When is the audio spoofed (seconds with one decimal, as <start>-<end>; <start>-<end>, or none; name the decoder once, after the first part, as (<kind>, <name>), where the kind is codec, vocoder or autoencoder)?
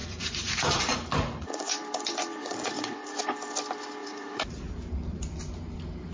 0.0-1.7 (vocoder, Vocos); 2.4-3.2; 4.0-4.7